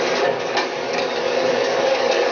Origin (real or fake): fake